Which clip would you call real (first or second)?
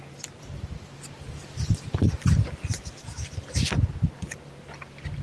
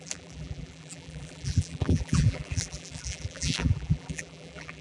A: first